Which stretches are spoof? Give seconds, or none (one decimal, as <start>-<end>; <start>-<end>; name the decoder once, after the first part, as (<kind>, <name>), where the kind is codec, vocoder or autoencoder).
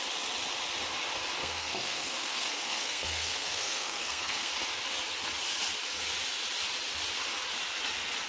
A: 1.4-4.5 (codec, SNAC)